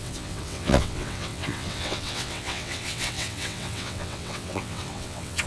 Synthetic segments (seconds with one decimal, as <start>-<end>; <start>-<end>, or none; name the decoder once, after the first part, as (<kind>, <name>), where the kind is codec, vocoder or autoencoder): 0.0-5.5 (vocoder, WaveNeXt)